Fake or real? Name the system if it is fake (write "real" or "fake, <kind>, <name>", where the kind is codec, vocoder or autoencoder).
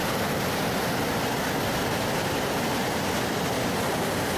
real